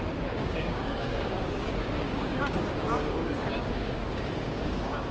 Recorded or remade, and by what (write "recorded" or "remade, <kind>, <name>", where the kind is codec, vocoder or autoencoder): remade, codec, DAC